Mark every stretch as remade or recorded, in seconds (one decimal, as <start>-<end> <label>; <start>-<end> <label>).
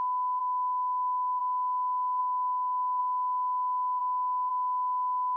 0.0-0.4 recorded; 0.4-1.4 remade; 1.4-2.2 recorded; 2.2-3.0 remade; 3.0-5.4 recorded